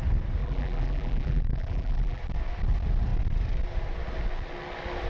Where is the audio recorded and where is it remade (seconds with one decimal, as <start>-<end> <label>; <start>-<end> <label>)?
0.0-0.4 recorded; 0.4-2.2 remade; 2.2-5.1 recorded